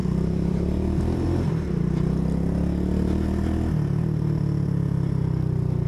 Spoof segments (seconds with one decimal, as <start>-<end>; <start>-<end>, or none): 0.0-1.5